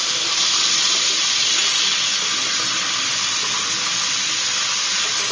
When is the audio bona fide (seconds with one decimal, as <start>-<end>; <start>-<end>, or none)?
0.0-5.3